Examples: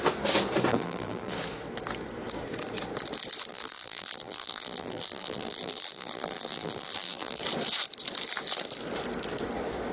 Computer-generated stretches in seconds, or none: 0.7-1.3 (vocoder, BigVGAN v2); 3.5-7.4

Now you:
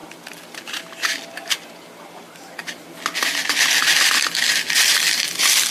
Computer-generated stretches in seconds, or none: none

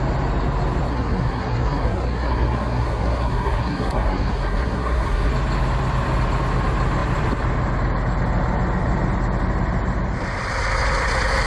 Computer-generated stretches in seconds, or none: 0.9-5.3 (codec, SNAC)

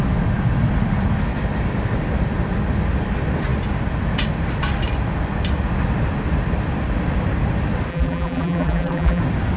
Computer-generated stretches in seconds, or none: 7.9-9.2 (vocoder, BigVGAN v2)

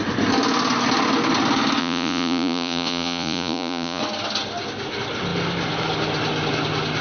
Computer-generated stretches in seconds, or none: 1.8-4.0 (vocoder, Vocos)

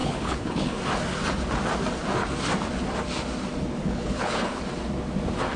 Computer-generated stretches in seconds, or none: 0.0-0.8 (codec, HILCodec); 3.8-4.6

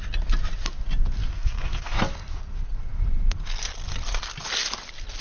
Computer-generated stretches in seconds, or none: 1.3-2.0 (codec, SNAC)

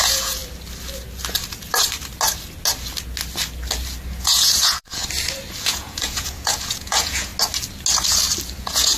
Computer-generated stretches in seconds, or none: 0.0-0.4 (vocoder, Vocos); 4.2-5.0; 5.6-7.3; 8.6-9.0